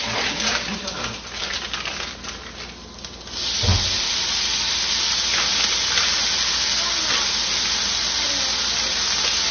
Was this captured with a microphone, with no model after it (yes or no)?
yes